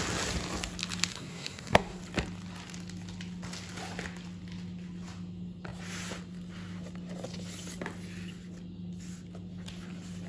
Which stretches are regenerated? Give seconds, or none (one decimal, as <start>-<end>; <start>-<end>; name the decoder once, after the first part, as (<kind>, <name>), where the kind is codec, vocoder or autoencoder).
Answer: 1.1-2.0 (codec, SNAC)